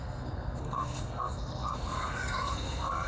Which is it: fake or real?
fake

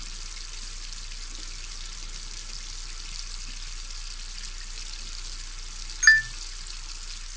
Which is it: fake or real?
real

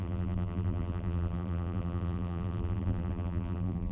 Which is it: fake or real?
fake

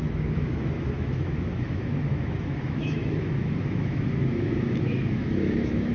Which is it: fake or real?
fake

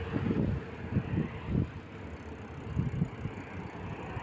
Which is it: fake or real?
real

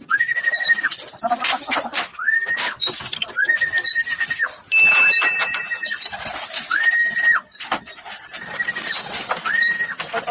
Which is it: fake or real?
fake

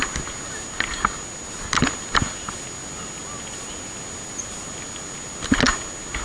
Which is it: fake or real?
real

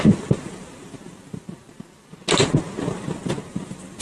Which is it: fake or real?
real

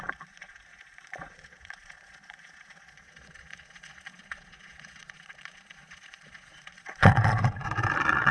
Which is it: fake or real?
fake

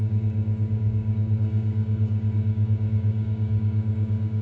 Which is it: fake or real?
fake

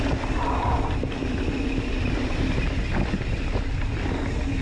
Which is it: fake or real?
real